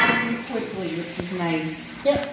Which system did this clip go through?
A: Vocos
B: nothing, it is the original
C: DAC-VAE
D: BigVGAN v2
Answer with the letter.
B